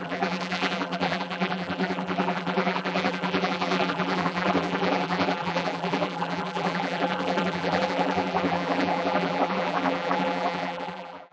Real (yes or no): no